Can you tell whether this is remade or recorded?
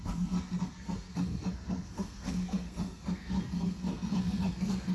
remade